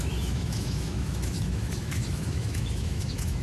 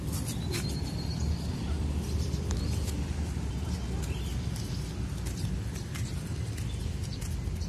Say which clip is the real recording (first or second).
second